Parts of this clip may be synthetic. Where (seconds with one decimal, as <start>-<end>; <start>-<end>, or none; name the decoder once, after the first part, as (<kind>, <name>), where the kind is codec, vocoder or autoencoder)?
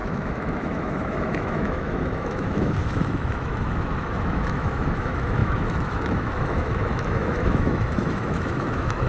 0.0-9.1 (autoencoder, DAC-VAE)